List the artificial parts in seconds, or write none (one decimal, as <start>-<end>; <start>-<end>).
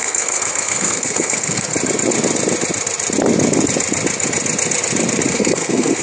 0.0-1.7; 5.3-6.0